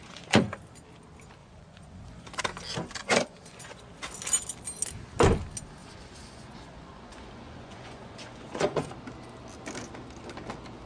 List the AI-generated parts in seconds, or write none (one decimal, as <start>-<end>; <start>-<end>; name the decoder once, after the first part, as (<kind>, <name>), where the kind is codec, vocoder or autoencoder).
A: 0.0-0.6 (vocoder, Vocos); 1.4-2.4; 3.0-3.9; 5.8-8.9